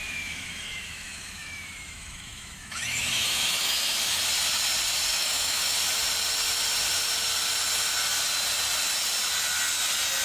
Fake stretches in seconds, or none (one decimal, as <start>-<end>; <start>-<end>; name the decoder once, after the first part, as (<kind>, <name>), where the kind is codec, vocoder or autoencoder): 0.0-4.2 (autoencoder, DAC-VAE); 5.1-5.8